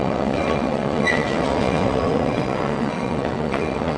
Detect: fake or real fake